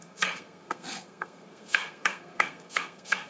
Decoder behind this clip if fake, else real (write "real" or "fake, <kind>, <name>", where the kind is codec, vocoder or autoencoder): fake, codec, SNAC